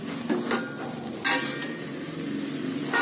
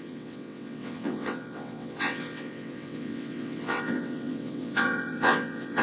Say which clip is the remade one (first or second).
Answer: second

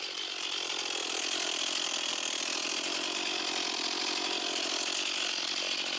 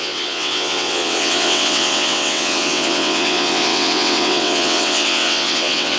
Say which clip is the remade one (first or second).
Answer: second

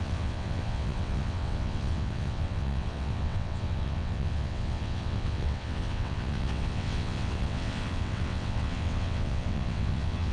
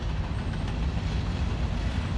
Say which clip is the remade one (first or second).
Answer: first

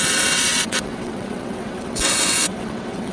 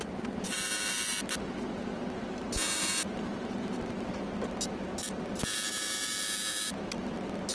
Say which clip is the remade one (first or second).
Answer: first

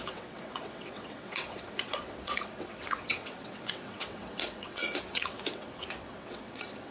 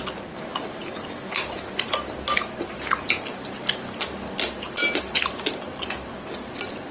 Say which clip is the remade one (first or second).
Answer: first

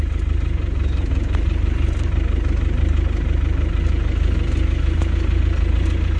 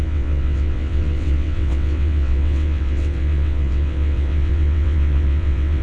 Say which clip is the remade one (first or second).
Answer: second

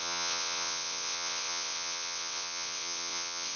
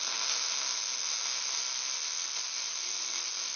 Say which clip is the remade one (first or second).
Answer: first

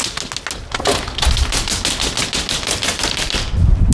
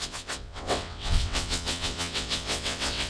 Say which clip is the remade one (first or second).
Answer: second